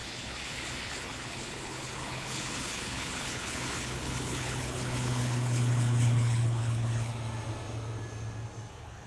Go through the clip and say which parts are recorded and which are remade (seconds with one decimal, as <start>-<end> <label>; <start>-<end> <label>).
0.0-7.1 remade; 7.1-8.7 recorded; 8.7-9.1 remade